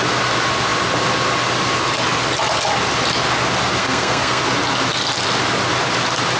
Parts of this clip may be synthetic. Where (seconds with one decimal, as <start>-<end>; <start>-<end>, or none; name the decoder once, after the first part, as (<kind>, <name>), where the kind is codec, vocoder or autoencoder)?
3.8-4.4 (codec, SNAC)